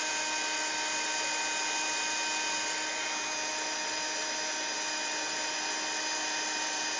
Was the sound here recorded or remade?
recorded